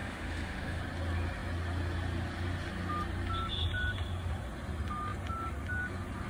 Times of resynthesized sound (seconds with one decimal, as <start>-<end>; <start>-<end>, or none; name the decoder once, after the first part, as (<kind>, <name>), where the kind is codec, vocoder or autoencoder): 0.0-0.8 (autoencoder, DAC-VAE)